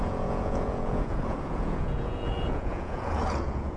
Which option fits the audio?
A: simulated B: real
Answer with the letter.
A